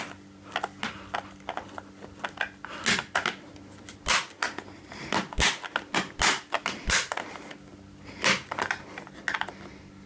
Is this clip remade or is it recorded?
recorded